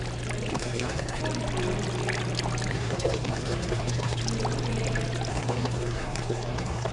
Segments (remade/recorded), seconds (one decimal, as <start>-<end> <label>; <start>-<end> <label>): 0.0-0.5 recorded; 0.5-1.2 remade; 1.2-2.7 recorded; 2.7-4.2 remade; 4.2-5.3 recorded; 5.3-6.9 remade

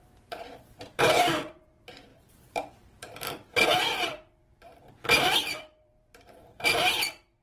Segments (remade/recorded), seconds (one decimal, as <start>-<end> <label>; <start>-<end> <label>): 0.0-7.4 remade

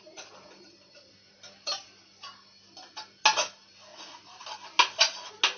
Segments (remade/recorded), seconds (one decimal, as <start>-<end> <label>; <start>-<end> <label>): 0.0-3.9 recorded; 3.9-4.4 remade; 4.4-5.6 recorded

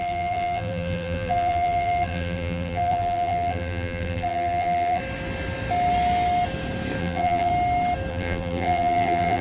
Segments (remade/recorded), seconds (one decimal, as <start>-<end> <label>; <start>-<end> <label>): 0.0-5.0 remade; 5.0-7.0 recorded; 7.0-7.5 remade; 7.5-8.1 recorded; 8.1-9.4 remade

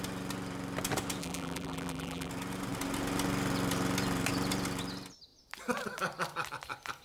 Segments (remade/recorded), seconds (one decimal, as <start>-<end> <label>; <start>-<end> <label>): 0.0-1.2 recorded; 1.2-2.3 remade; 2.3-7.0 recorded

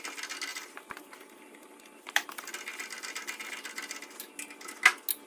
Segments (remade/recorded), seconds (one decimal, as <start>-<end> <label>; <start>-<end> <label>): 0.0-0.5 recorded; 0.5-2.5 remade; 2.5-5.3 recorded